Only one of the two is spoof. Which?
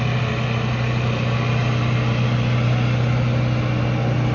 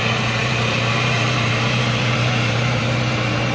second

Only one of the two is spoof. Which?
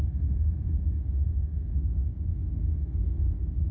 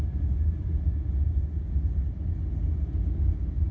first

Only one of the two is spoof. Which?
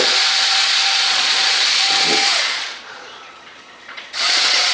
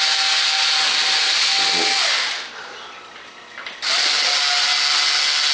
first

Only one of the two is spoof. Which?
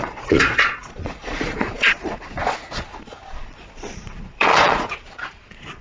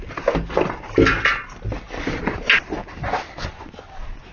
first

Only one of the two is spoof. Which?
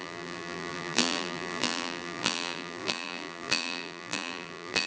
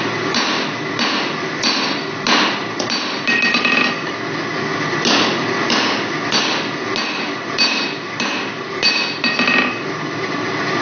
first